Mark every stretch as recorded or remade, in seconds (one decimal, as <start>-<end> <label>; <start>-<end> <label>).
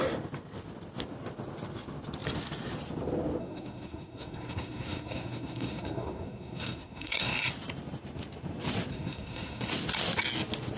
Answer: 0.0-3.4 recorded; 3.4-7.5 remade; 7.5-8.9 recorded; 8.9-9.7 remade; 9.7-10.8 recorded